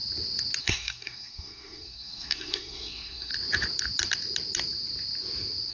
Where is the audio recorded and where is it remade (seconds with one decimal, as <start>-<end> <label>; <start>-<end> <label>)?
0.0-0.6 recorded; 0.6-3.3 remade; 3.3-5.7 recorded

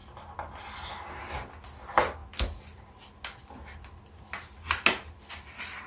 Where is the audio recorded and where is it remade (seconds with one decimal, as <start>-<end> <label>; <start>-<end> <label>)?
0.0-5.9 recorded

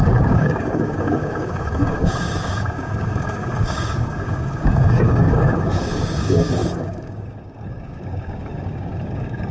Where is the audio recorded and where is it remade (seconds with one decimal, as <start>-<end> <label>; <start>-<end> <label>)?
0.0-9.5 remade

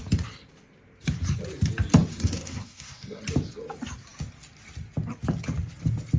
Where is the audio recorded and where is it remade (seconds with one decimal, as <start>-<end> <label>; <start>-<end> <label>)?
0.0-2.1 recorded; 2.1-3.2 remade; 3.2-6.2 recorded